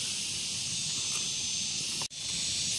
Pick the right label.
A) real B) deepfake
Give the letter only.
A